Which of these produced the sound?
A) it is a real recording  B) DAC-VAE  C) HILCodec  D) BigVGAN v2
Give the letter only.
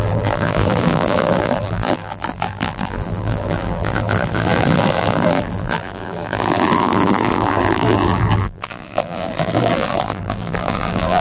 D